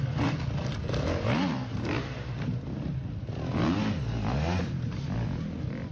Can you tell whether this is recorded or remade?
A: recorded